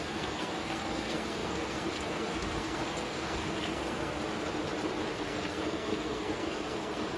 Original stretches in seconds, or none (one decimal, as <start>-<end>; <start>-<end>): 4.2-5.1